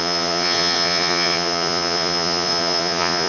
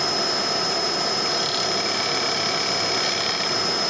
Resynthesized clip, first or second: first